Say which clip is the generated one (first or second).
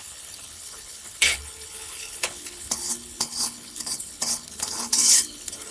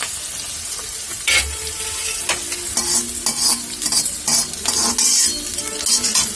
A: first